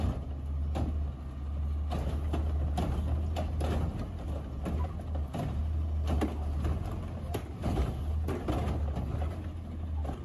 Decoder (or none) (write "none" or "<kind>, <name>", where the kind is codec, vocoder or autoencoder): none